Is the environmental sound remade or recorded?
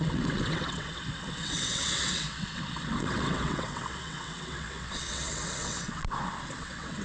remade